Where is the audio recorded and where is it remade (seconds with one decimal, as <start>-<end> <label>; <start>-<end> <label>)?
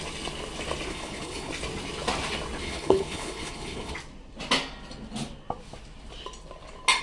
0.0-0.9 recorded; 0.9-1.5 remade; 1.5-2.6 recorded; 2.6-3.9 remade; 3.9-7.0 recorded